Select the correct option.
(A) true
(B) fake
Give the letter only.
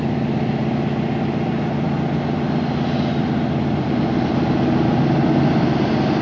A